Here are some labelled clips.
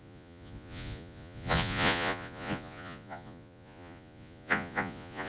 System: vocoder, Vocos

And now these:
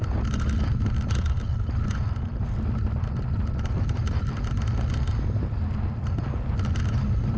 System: none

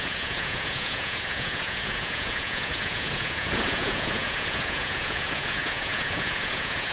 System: vocoder, Vocos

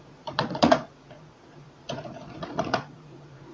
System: vocoder, Vocos